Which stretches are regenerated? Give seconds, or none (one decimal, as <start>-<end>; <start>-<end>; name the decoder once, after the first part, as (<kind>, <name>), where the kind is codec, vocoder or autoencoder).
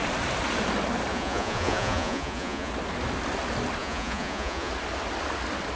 1.1-2.7 (vocoder, Vocos); 3.8-4.7